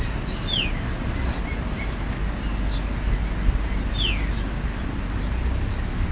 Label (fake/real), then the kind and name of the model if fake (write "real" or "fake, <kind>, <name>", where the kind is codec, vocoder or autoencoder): real